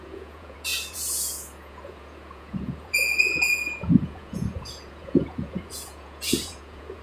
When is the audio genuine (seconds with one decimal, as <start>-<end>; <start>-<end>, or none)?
none